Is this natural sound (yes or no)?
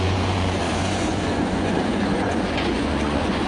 no